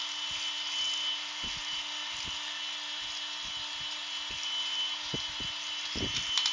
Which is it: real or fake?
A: real